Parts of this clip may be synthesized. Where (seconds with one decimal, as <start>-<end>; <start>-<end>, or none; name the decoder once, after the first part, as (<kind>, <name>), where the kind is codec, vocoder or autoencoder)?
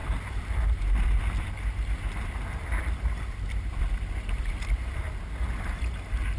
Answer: none